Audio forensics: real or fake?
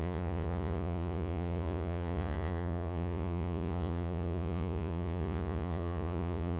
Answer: fake